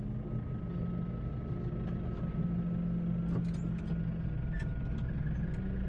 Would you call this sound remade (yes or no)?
no